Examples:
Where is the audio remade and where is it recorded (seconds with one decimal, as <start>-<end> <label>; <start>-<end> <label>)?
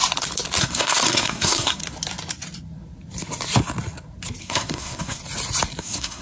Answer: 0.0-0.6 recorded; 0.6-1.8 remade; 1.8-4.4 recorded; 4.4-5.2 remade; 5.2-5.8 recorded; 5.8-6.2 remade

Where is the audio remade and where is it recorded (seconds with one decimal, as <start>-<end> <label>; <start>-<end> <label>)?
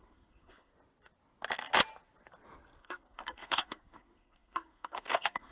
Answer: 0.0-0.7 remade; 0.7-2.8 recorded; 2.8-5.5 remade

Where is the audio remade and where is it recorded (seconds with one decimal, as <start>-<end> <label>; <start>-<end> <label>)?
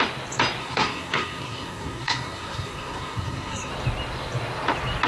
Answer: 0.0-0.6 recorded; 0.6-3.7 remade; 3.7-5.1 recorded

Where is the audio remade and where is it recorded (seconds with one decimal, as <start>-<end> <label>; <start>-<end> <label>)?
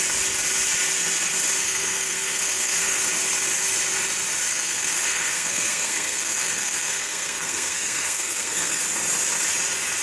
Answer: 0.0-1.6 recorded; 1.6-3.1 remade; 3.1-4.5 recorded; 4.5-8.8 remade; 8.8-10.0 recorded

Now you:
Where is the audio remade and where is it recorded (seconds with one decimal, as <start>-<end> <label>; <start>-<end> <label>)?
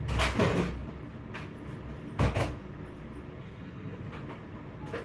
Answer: 0.0-3.4 recorded; 3.4-4.0 remade; 4.0-5.0 recorded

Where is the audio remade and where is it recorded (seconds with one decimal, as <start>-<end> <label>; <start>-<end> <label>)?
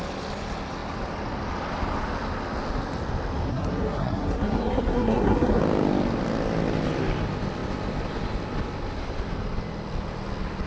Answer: 0.0-3.5 recorded; 3.5-5.6 remade; 5.6-10.7 recorded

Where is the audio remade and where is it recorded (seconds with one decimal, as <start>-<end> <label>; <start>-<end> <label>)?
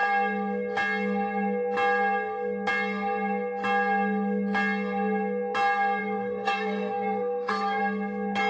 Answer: 0.0-6.0 recorded; 6.0-7.8 remade; 7.8-8.5 recorded